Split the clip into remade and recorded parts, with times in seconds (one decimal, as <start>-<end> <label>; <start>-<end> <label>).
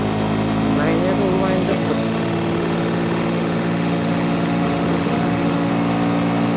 0.0-1.7 recorded; 1.7-5.7 remade; 5.7-6.6 recorded